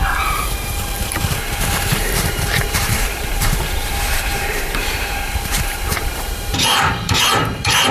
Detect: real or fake fake